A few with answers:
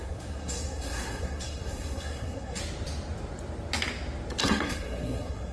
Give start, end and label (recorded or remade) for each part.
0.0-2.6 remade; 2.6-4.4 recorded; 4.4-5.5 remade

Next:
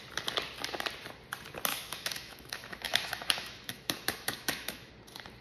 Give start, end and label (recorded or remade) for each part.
0.0-1.7 recorded; 1.7-4.9 remade; 4.9-5.4 recorded

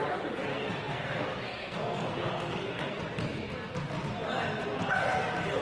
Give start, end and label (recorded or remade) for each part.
0.0-0.5 recorded; 0.5-3.0 remade; 3.0-5.6 recorded

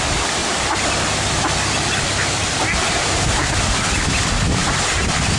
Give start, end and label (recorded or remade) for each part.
0.0-0.4 remade; 0.4-3.6 recorded; 3.6-4.6 remade; 4.6-5.4 recorded

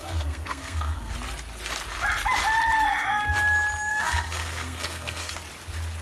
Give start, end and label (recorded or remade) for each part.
0.0-1.1 remade; 1.1-3.9 recorded; 3.9-5.3 remade; 5.3-6.0 recorded

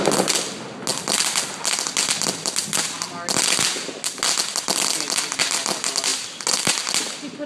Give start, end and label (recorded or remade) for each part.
0.0-7.5 recorded

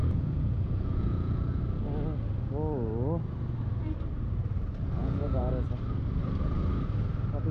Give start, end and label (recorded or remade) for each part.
0.0-1.6 remade; 1.6-5.0 recorded; 5.0-5.5 remade; 5.5-7.5 recorded

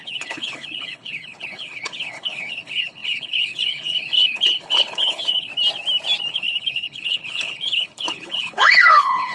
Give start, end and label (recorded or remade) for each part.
0.0-5.5 remade; 5.5-6.3 recorded; 6.3-9.3 remade